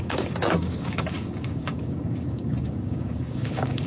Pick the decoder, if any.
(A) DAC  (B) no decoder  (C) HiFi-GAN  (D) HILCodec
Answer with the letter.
A